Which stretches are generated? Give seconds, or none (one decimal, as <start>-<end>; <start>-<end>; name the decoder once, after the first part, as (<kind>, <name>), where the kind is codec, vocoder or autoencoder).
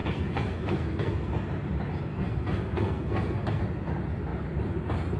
0.0-1.3 (codec, SNAC); 2.1-3.6